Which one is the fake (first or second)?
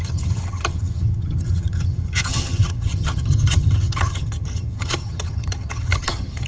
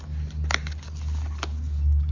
first